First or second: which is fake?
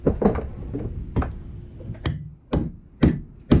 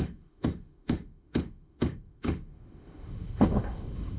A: second